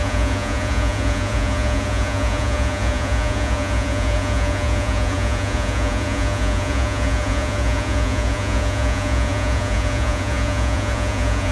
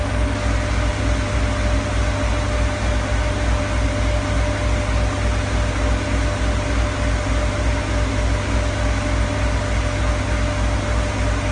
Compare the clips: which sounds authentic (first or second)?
second